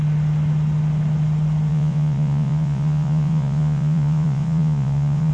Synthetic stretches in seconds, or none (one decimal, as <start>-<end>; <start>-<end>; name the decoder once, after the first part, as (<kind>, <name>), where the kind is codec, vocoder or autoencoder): 1.7-5.3 (vocoder, Vocos)